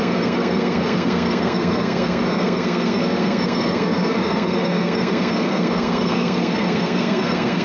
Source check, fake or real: fake